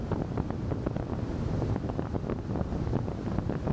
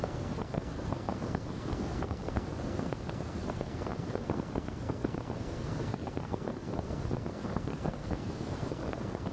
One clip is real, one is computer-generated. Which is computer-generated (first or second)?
second